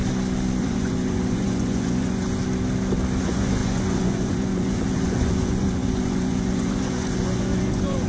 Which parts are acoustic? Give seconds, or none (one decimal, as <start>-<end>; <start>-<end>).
0.0-0.6; 2.4-3.2